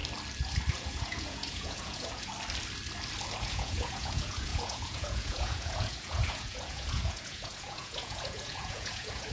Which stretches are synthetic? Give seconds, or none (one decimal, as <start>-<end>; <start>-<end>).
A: 0.7-2.3; 3.4-9.3